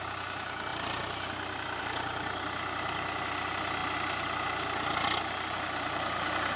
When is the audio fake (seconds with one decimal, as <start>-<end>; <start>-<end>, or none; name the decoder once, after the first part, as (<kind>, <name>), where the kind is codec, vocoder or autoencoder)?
none